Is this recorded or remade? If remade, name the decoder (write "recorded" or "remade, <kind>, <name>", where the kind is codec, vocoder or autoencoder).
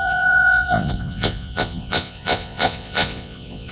remade, vocoder, Vocos